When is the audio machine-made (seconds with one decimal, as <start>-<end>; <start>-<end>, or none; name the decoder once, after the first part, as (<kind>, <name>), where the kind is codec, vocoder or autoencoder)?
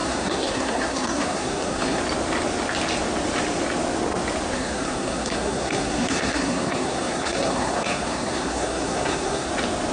0.0-2.0 (codec, SNAC); 4.5-9.5